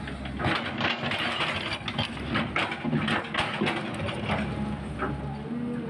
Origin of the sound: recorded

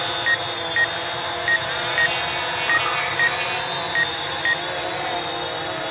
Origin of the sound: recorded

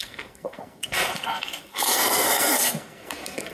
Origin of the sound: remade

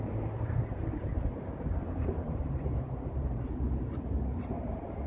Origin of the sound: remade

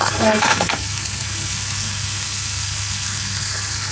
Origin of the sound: remade